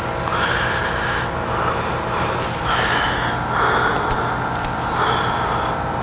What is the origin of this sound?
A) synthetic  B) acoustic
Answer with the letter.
B